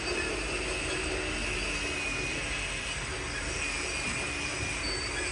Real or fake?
real